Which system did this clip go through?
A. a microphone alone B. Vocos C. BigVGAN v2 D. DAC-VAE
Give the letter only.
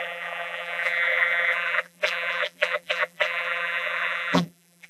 C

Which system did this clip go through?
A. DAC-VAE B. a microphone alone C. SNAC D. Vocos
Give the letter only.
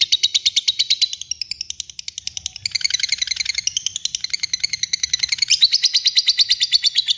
B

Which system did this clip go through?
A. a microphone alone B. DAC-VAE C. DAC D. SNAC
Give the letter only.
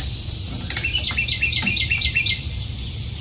A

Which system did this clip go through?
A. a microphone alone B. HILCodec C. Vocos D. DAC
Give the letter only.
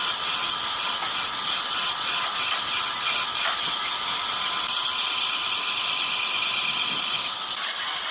A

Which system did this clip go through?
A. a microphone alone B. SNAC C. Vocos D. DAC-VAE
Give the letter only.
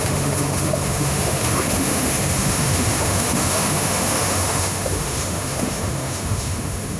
D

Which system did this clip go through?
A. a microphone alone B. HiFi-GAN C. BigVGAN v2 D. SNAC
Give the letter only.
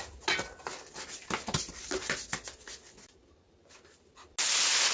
A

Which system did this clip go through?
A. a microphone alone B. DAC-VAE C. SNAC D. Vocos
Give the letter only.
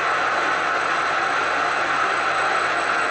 A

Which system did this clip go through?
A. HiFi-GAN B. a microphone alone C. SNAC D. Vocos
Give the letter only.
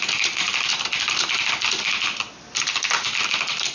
B